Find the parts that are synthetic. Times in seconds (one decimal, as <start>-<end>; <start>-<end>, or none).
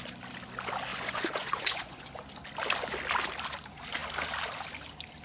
0.9-2.1